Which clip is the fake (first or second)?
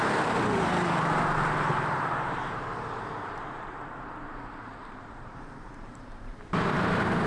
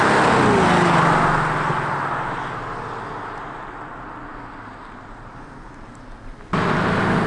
first